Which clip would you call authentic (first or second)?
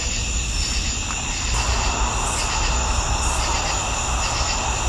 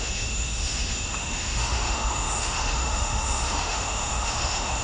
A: first